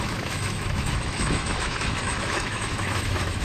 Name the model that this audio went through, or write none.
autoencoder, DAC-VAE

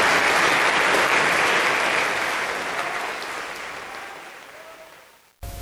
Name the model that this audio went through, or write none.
none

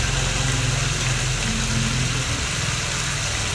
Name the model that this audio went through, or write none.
none